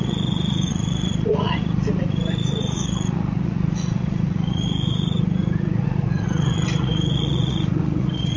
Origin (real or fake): fake